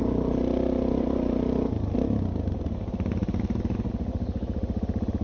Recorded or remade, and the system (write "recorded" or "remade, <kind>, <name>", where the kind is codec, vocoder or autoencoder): recorded